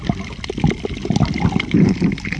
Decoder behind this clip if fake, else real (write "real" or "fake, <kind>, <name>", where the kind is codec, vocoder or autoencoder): real